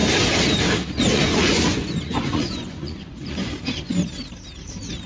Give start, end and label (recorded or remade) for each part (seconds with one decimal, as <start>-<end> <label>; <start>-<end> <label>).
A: 0.0-1.1 recorded; 1.1-3.5 remade; 3.5-5.1 recorded